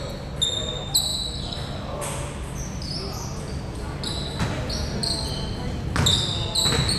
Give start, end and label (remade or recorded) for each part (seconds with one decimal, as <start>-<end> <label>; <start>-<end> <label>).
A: 0.0-7.0 recorded